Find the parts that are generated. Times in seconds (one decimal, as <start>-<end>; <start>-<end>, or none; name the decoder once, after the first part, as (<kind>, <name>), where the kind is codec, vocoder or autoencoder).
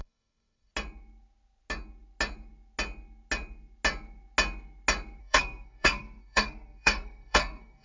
0.0-0.7 (codec, SNAC); 5.2-7.8